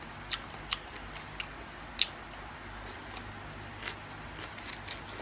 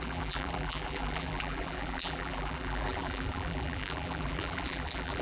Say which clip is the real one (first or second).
first